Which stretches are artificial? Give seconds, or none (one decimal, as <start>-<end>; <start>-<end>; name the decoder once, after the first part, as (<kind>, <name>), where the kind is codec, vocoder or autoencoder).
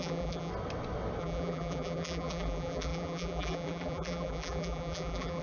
0.0-0.5 (vocoder, BigVGAN v2); 1.2-5.4